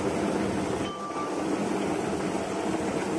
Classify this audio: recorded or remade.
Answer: recorded